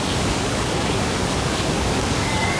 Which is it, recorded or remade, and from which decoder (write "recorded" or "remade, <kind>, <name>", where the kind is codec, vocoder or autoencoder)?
remade, codec, DAC